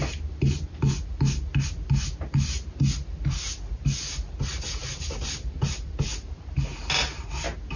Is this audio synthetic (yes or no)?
no